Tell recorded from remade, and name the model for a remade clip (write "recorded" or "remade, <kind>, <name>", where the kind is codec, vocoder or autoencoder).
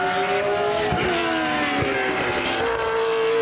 recorded